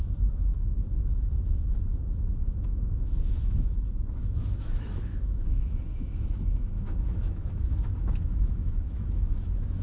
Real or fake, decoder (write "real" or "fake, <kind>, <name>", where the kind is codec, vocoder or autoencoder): fake, autoencoder, DAC-VAE